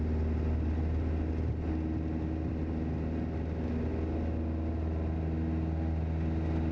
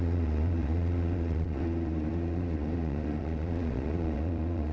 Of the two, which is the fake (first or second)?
second